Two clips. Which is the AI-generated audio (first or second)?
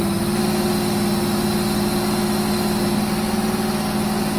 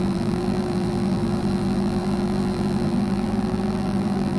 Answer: second